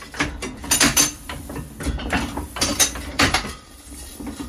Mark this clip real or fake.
fake